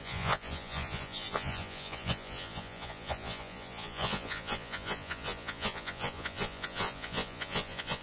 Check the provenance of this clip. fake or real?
fake